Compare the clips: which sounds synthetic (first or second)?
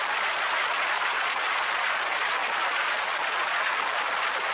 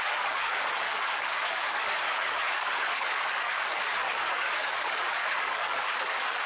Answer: second